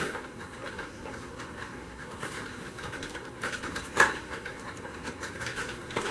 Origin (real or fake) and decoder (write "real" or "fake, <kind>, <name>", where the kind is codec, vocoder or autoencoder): fake, codec, SNAC